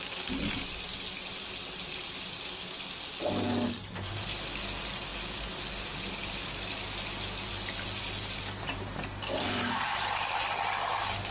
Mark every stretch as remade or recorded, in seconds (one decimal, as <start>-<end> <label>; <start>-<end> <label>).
0.0-11.3 recorded